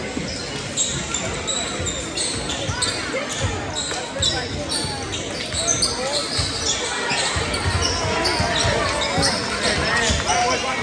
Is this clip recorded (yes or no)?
yes